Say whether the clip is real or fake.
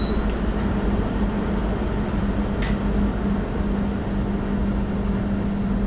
real